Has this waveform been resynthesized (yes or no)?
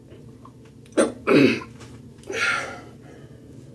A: no